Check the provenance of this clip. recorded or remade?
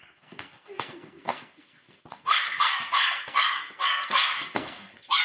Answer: remade